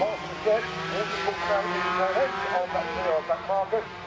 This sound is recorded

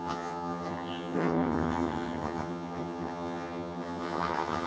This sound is remade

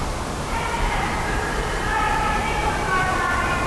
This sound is remade